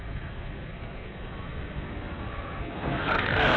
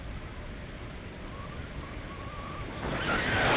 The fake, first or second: first